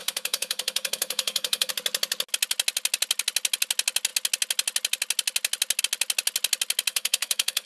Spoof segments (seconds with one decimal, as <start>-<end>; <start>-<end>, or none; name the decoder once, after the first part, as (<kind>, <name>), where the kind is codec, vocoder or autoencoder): 0.0-1.7 (codec, SNAC); 6.9-7.7